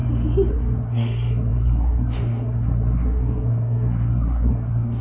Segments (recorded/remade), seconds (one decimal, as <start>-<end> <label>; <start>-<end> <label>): 0.0-0.5 recorded; 0.5-5.0 remade